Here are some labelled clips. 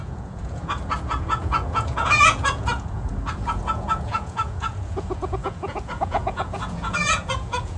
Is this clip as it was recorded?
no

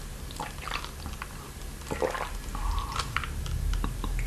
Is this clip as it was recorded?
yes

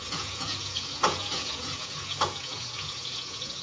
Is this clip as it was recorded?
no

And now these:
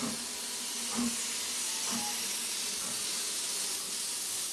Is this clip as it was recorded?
yes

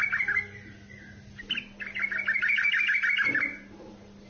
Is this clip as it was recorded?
yes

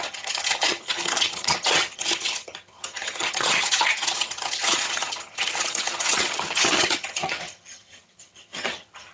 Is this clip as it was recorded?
no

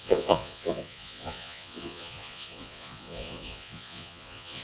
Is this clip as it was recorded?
no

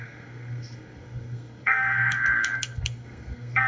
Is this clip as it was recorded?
no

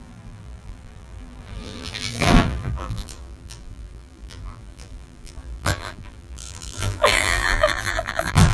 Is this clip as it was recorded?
no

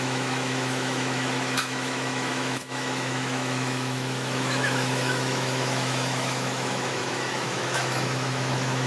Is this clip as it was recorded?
no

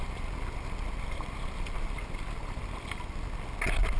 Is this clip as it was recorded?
yes